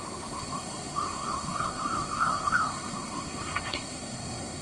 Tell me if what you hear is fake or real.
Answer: fake